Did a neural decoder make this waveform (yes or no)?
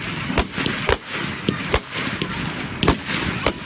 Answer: no